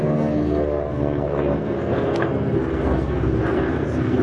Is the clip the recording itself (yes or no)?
no